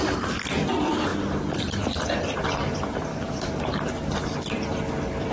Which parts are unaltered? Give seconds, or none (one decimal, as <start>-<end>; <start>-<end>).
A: 0.0-3.1; 3.7-5.3